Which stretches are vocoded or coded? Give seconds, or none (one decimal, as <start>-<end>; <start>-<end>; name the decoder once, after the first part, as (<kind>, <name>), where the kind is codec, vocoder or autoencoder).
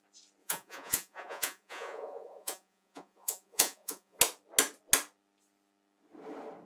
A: 0.4-4.2 (vocoder, Vocos)